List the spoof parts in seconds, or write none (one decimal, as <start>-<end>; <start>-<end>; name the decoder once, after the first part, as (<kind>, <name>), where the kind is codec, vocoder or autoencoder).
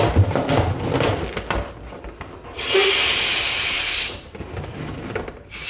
none